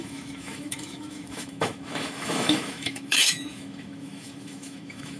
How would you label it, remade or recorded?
remade